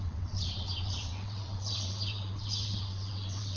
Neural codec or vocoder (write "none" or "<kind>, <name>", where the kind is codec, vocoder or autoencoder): vocoder, WaveNeXt